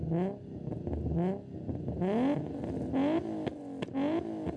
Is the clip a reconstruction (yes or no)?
no